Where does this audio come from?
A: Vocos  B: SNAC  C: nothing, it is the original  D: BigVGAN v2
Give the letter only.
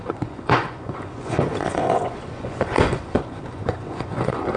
A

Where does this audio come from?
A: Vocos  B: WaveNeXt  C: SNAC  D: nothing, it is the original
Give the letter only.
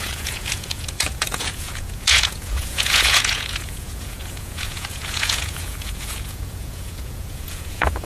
A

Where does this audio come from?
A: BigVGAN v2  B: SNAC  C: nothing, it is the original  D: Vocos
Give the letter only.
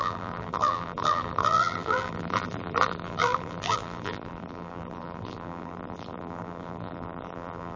A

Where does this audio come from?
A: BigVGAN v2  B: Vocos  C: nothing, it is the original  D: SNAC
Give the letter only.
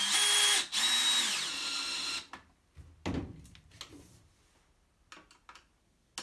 C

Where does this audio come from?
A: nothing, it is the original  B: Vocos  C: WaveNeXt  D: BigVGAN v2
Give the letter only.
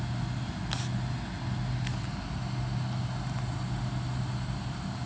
A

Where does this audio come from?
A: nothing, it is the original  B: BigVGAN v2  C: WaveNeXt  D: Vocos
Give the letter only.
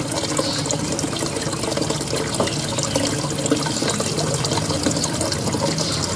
A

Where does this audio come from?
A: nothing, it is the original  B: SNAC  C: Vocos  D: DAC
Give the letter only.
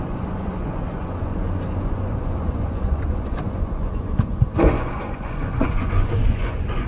C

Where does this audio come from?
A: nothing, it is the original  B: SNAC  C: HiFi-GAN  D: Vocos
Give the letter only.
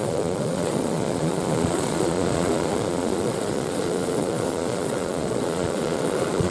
D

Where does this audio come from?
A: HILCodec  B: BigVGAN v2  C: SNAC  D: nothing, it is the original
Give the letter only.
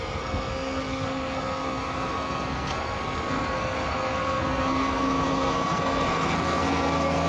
C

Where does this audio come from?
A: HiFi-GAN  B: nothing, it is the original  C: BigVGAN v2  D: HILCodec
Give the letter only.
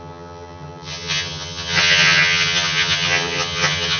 A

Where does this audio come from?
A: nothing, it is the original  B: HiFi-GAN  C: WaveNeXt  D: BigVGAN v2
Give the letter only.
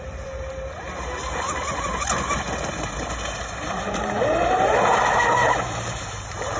D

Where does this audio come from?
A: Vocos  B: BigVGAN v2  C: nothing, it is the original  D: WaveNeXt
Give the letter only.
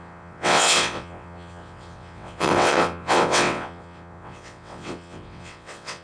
D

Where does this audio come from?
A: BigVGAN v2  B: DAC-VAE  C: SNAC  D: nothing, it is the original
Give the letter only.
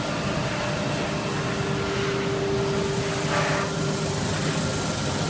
D